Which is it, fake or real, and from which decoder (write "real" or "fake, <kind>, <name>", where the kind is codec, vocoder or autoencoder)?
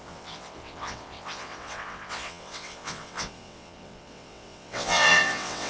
fake, vocoder, WaveNeXt